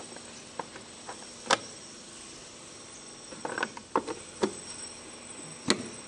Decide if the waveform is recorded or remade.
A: recorded